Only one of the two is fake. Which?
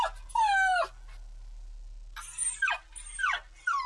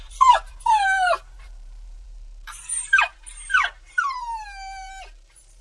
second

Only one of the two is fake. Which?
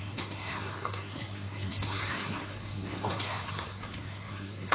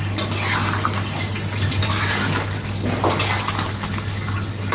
first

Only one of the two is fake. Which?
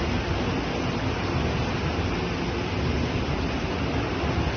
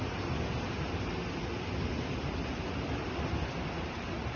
second